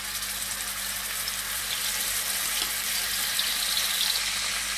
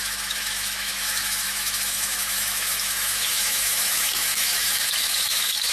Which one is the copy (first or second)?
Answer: second